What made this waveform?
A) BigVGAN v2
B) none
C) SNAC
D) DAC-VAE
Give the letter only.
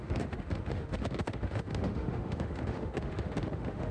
D